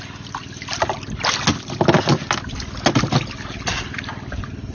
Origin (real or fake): real